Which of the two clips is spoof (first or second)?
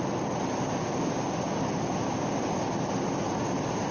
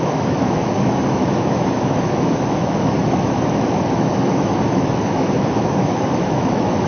second